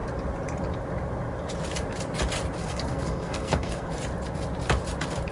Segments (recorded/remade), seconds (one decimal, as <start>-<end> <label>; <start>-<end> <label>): 0.0-2.6 recorded; 2.6-3.9 remade; 3.9-5.3 recorded